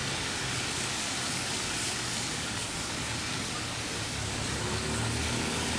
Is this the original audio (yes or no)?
no